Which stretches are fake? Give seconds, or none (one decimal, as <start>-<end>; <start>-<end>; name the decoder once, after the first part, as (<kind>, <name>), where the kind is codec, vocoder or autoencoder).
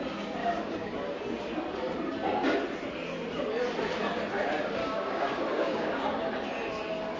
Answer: 0.4-1.2 (codec, DAC); 4.8-6.1